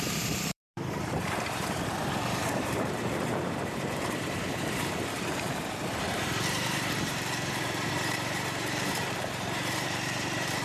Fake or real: fake